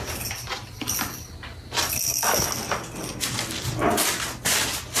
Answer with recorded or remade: recorded